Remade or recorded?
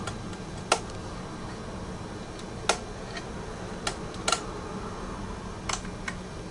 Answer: recorded